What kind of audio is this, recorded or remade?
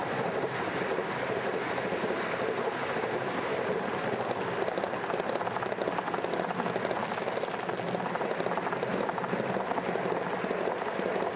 recorded